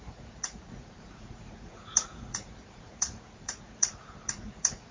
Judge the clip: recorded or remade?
remade